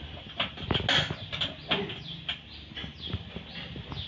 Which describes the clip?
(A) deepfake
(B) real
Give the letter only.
B